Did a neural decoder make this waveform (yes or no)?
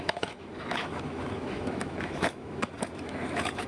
yes